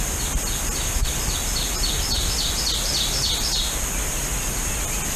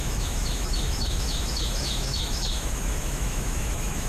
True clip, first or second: first